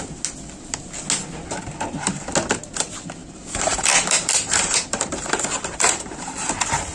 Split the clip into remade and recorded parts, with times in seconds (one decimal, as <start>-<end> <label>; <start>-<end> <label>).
0.0-3.2 recorded; 3.2-6.5 remade; 6.5-6.9 recorded